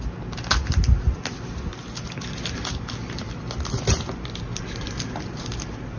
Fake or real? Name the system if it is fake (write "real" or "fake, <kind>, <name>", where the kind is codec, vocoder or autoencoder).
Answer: real